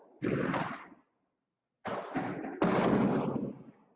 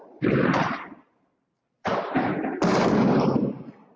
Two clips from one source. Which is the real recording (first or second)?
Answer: first